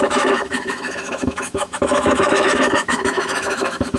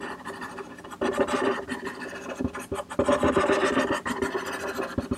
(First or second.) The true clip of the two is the second